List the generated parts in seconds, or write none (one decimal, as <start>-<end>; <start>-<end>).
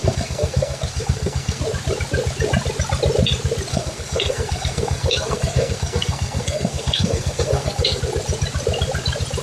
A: 0.0-1.6; 3.7-8.0